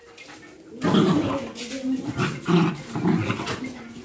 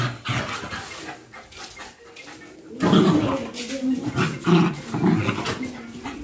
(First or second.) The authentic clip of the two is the second